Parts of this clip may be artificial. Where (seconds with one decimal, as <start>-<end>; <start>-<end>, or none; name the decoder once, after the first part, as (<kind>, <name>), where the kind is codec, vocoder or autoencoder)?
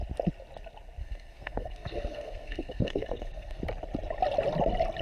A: 1.0-3.6 (codec, SNAC)